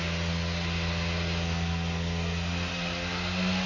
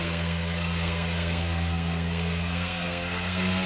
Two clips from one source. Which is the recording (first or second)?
first